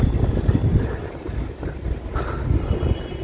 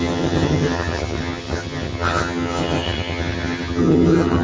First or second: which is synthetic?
second